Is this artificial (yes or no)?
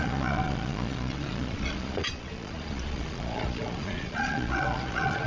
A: yes